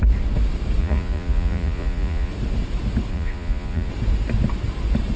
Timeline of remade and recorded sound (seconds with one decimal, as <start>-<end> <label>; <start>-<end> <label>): 0.0-0.8 recorded; 0.8-2.3 remade; 2.3-3.1 recorded; 3.1-3.9 remade; 3.9-5.2 recorded